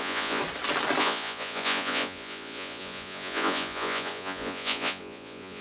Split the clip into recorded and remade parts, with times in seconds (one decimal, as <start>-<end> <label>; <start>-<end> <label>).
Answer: 0.0-0.4 remade; 0.4-1.0 recorded; 1.0-5.6 remade